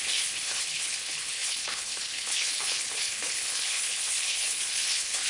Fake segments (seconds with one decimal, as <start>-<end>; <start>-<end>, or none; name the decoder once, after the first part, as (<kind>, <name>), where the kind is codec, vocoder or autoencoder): 0.0-5.3 (codec, HILCodec)